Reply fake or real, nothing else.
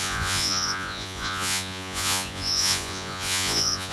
fake